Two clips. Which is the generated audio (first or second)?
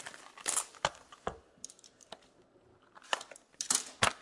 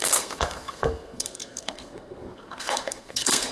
second